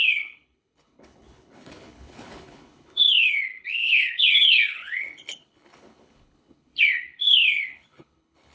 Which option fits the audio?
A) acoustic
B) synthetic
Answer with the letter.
B